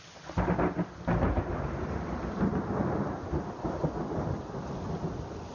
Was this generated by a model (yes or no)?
no